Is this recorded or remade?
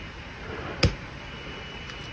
recorded